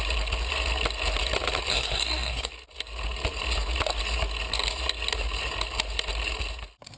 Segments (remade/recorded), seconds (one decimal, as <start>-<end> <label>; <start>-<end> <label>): 0.0-1.7 recorded; 1.7-2.5 remade; 2.5-7.0 recorded